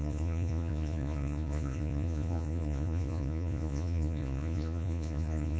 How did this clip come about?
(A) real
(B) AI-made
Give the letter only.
B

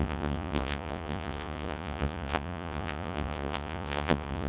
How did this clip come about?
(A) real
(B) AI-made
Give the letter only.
B